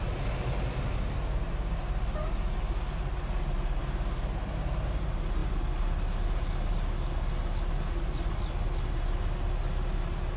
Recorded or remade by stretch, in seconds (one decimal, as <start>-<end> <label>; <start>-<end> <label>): 0.0-10.4 recorded

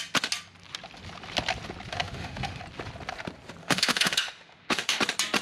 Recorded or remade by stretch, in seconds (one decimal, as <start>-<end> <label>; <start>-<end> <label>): 0.0-1.9 recorded; 1.9-2.6 remade; 2.6-3.6 recorded; 3.6-5.0 remade; 5.0-5.4 recorded

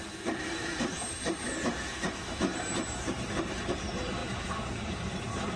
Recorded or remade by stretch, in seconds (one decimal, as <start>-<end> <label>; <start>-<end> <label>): 0.0-5.6 remade

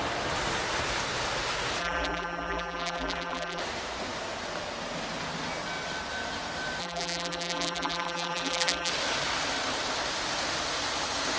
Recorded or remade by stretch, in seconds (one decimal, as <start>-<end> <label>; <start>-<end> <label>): 0.0-1.8 recorded; 1.8-3.6 remade; 3.6-6.8 recorded; 6.8-8.9 remade; 8.9-11.4 recorded

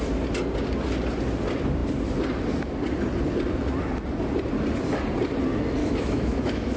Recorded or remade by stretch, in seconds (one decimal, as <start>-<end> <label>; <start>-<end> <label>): 0.0-5.8 recorded; 5.8-6.8 remade

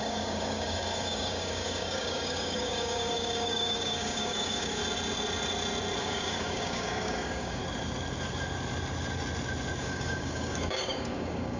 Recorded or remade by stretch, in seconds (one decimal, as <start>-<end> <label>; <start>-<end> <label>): 0.0-4.8 remade; 4.8-6.0 recorded; 6.0-7.6 remade; 7.6-9.8 recorded; 9.8-11.6 remade

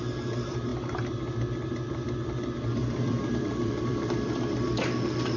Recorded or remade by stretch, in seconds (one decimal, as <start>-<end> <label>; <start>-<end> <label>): 0.0-0.7 remade; 0.7-1.9 recorded; 1.9-5.4 remade